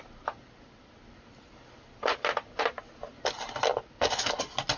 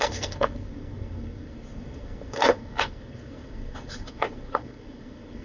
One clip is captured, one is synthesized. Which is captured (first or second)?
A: first